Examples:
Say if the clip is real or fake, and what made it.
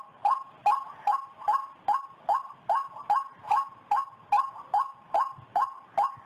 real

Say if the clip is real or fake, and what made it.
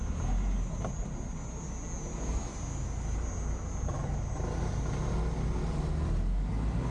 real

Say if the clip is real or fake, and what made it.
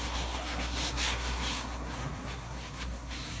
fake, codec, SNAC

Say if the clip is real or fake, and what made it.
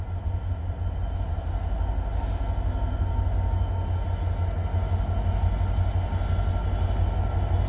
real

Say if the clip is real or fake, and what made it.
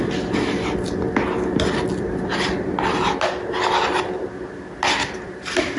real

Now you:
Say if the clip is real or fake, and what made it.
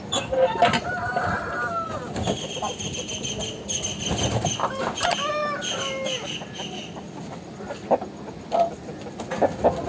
real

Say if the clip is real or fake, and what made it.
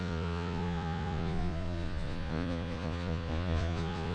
fake, vocoder, Vocos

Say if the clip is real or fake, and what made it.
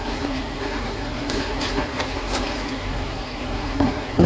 fake, codec, SNAC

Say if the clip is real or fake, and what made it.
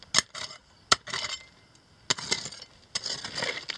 real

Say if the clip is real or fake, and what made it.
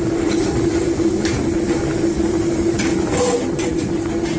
real